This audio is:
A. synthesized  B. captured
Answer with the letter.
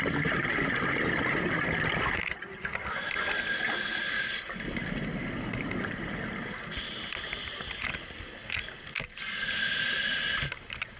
B